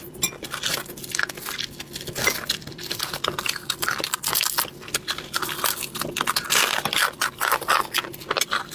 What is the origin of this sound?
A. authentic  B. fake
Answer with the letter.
A